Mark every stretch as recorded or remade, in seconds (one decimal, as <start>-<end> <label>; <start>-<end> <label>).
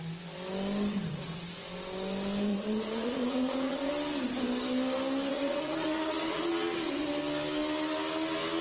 0.0-2.5 recorded; 2.5-3.9 remade; 3.9-5.3 recorded; 5.3-6.5 remade; 6.5-8.6 recorded